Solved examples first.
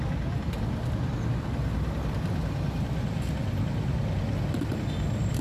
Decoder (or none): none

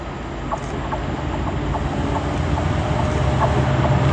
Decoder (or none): none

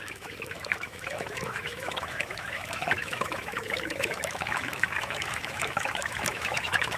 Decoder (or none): autoencoder, DAC-VAE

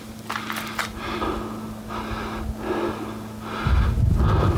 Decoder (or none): none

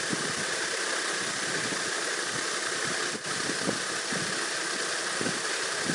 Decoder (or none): none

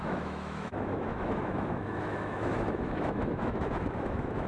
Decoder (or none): autoencoder, DAC-VAE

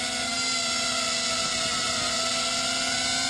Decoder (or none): none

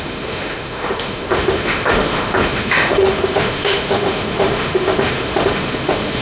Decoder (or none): autoencoder, DAC-VAE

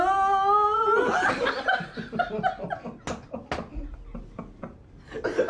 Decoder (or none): none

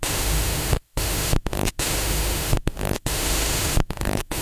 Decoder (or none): autoencoder, DAC-VAE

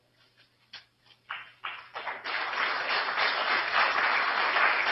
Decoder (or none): none